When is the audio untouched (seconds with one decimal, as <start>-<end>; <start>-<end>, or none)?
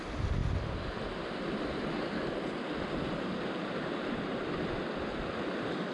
0.0-5.9